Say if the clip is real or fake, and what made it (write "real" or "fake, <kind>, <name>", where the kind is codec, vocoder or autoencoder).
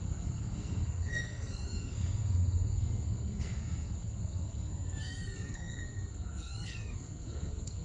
fake, codec, SNAC